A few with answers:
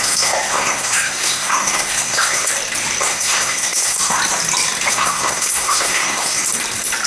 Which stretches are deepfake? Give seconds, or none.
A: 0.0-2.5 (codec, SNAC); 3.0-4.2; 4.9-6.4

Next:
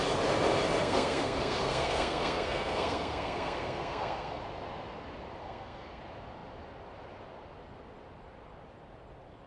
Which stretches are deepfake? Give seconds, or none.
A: 0.8-4.4 (codec, SNAC); 5.4-6.0

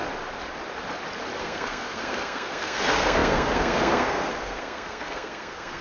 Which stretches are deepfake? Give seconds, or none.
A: 1.4-5.8 (codec, SNAC)

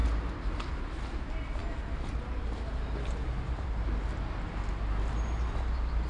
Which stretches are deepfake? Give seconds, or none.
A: none

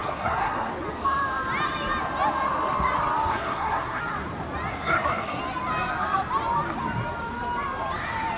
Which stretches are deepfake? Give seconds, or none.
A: 0.0-0.7 (codec, SNAC); 3.3-4.0; 4.7-5.4

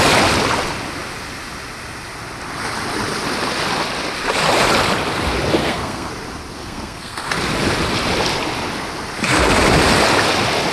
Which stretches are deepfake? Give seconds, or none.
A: 5.6-6.1 (codec, SNAC); 6.6-7.3